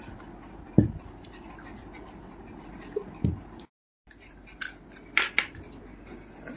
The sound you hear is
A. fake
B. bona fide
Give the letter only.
B